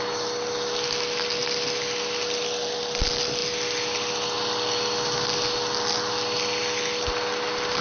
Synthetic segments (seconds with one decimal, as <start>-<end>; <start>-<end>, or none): none